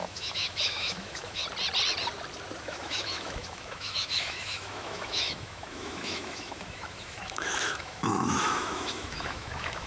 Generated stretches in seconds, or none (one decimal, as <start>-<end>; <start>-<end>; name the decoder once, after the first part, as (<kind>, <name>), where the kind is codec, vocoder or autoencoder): 0.0-1.4 (autoencoder, DAC-VAE); 2.6-9.9